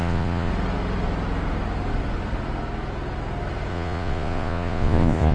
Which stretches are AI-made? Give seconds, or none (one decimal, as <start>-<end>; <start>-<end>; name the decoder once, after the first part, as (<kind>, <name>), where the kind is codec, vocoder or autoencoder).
0.0-0.5 (vocoder, Vocos); 3.7-5.3